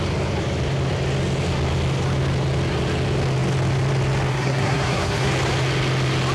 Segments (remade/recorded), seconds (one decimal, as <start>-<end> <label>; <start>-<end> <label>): 0.0-4.3 recorded; 4.3-5.3 remade; 5.3-6.3 recorded